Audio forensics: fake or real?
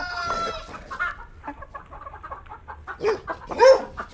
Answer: real